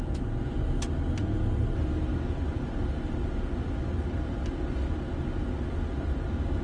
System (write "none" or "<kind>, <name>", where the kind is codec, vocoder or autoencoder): none